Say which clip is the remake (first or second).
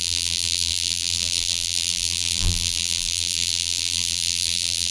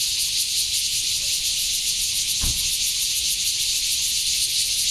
first